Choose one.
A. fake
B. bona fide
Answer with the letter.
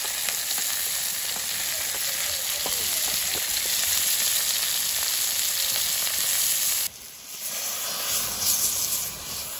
B